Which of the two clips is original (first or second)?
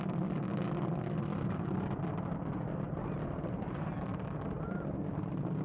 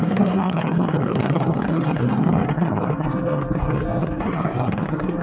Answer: first